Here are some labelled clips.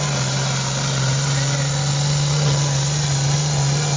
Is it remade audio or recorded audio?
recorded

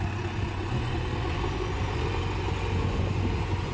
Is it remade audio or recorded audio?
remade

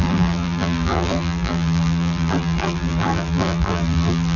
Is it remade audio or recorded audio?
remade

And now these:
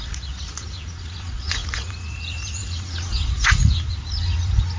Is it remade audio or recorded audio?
remade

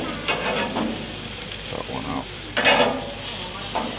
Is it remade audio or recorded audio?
recorded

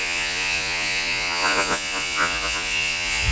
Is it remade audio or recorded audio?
remade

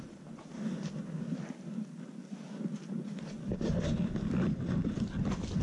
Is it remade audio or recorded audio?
recorded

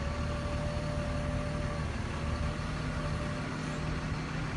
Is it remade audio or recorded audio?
recorded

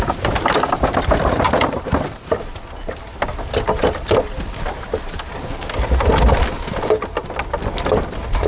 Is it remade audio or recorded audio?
recorded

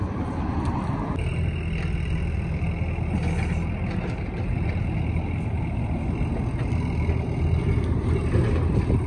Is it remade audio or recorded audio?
recorded